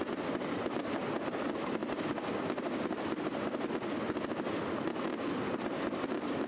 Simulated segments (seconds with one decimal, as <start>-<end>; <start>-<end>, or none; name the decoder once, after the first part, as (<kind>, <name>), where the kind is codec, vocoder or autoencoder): none